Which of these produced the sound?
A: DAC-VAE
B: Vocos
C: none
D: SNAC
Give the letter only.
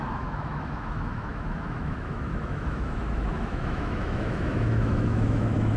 A